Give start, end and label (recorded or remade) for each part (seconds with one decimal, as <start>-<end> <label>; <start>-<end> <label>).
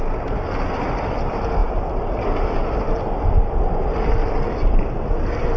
0.0-5.6 recorded